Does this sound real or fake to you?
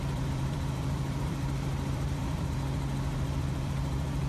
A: fake